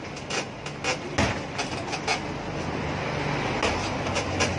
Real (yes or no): yes